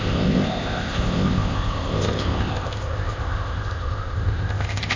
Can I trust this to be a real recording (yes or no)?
no